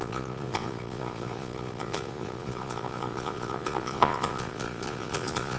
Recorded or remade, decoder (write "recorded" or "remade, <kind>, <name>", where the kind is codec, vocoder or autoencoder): remade, vocoder, Vocos